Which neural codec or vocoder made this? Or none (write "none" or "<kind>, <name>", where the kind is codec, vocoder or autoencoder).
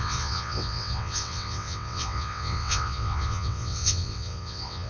vocoder, WaveNeXt